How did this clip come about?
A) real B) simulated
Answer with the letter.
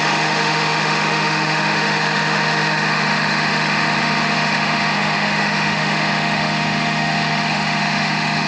B